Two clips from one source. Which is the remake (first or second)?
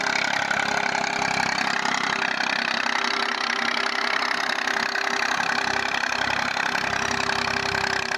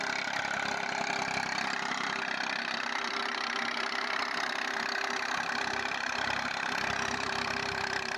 second